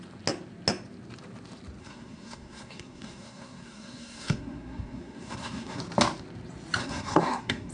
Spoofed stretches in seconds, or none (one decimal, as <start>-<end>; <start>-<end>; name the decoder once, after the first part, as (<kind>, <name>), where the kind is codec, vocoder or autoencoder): 1.8-5.8 (codec, SNAC); 6.8-7.7